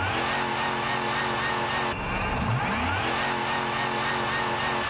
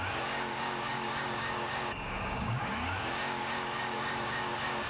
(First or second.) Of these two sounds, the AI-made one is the second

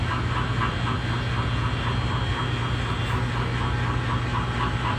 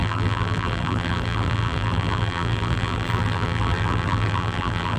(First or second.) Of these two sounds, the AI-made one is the second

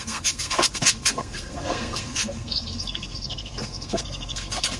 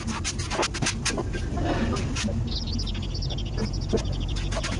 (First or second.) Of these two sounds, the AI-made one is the first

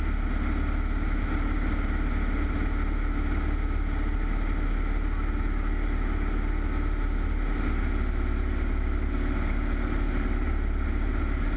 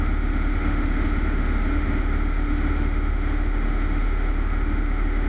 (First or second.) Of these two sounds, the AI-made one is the second